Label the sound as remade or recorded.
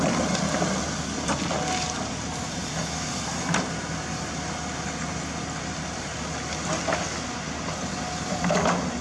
recorded